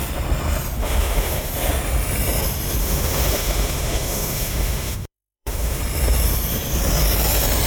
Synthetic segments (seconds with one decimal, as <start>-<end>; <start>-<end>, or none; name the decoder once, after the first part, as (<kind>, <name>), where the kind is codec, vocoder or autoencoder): 0.8-1.5 (autoencoder, DAC-VAE); 2.8-5.8

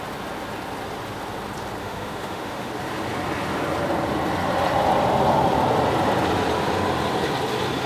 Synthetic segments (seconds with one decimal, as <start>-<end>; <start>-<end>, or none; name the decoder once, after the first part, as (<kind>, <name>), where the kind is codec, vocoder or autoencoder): 1.8-2.7 (autoencoder, DAC-VAE)

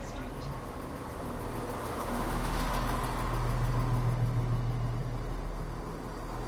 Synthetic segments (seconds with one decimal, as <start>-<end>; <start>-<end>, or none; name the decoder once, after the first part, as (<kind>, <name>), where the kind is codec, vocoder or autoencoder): 1.8-2.7 (autoencoder, DAC-VAE)

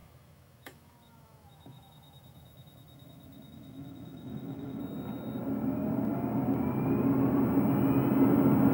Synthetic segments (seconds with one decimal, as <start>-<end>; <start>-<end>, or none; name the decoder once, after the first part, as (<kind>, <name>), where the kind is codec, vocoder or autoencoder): 0.0-4.8 (autoencoder, DAC-VAE)

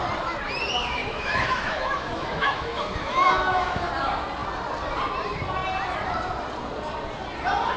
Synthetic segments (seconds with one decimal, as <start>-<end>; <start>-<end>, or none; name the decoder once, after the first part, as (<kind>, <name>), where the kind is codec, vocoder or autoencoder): 1.0-3.9 (autoencoder, DAC-VAE)